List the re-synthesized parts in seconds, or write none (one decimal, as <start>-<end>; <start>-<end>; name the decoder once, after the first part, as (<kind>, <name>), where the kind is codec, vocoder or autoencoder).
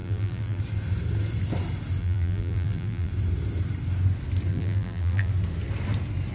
0.0-0.6 (vocoder, BigVGAN v2); 2.0-3.1; 4.5-5.3